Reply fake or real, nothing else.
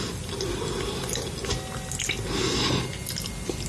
real